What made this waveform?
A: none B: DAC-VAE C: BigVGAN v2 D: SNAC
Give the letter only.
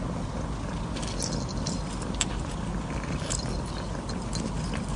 A